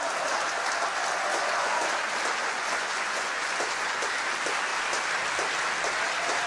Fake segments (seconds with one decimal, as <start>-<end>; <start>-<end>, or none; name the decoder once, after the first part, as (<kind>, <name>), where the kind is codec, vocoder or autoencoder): 1.3-1.9 (vocoder, Vocos); 2.4-4.0